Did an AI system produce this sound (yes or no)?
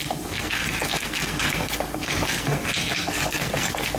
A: yes